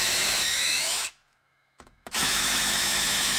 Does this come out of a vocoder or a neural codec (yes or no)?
yes